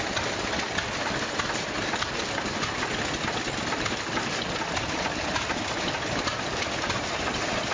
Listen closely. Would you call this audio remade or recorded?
recorded